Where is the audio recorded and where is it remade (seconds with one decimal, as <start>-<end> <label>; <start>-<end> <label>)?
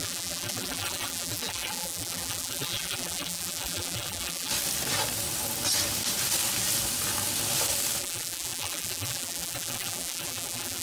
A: 0.0-4.5 remade; 4.5-8.0 recorded; 8.0-10.8 remade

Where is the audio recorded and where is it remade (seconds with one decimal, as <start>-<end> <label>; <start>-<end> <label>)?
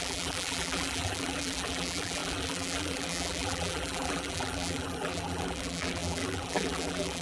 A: 0.0-7.2 remade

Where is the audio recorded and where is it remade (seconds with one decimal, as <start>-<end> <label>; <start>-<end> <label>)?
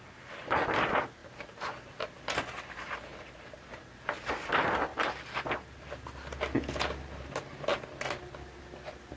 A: 0.0-9.2 recorded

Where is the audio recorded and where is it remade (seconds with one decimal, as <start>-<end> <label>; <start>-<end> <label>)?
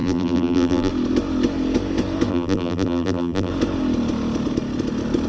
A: 0.0-0.9 remade; 0.9-2.3 recorded; 2.3-3.5 remade; 3.5-5.3 recorded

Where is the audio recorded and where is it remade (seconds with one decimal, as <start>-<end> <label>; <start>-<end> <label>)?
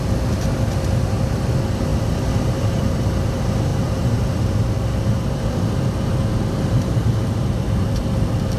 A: 0.0-3.7 recorded; 3.7-4.2 remade; 4.2-7.2 recorded; 7.2-8.0 remade; 8.0-8.6 recorded